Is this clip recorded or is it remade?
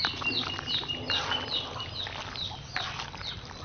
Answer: recorded